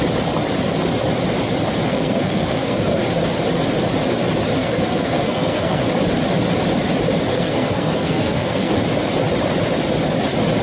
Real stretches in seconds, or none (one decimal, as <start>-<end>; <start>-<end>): 0.0-1.9; 3.0-4.6; 5.8-7.3; 8.8-10.6